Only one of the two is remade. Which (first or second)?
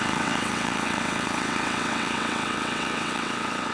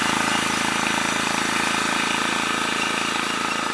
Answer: first